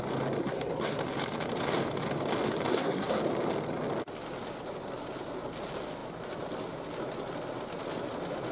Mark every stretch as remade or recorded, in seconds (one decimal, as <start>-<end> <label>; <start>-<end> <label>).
0.0-0.4 recorded; 0.4-1.0 remade; 1.0-2.7 recorded; 2.7-3.2 remade; 3.2-8.5 recorded